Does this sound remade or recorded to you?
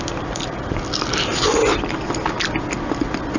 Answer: recorded